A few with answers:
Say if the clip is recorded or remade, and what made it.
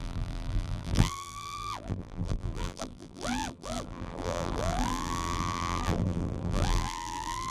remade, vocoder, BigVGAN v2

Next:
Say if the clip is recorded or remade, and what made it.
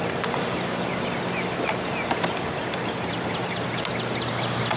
recorded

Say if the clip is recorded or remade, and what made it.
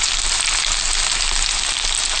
recorded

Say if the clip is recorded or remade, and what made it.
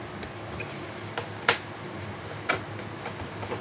recorded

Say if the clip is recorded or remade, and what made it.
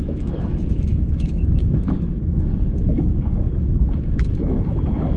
remade, autoencoder, DAC-VAE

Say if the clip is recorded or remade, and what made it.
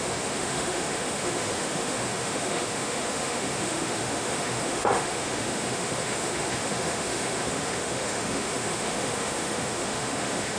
remade, autoencoder, DAC-VAE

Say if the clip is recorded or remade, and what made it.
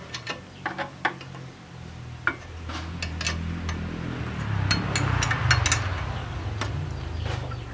recorded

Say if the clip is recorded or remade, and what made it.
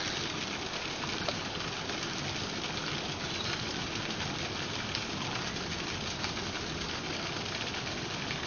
recorded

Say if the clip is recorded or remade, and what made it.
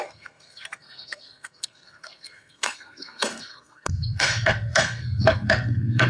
remade, codec, SNAC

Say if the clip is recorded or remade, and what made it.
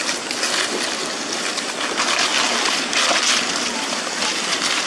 recorded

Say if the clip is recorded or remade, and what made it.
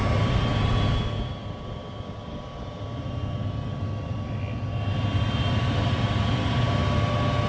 recorded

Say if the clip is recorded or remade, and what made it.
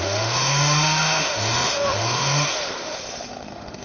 remade, autoencoder, DAC-VAE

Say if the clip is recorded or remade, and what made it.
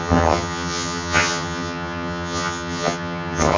remade, vocoder, HiFi-GAN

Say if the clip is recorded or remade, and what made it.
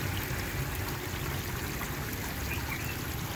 recorded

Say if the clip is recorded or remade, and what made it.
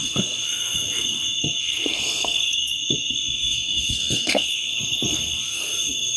remade, codec, SNAC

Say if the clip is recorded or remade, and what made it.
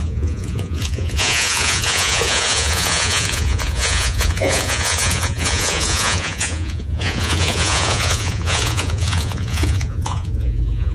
remade, vocoder, Vocos